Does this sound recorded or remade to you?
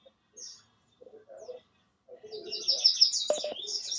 recorded